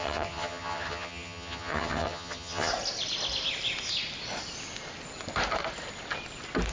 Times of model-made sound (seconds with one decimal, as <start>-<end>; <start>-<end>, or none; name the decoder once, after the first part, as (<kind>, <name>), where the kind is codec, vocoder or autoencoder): 0.0-2.7 (vocoder, HiFi-GAN)